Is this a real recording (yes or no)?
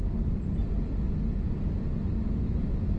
yes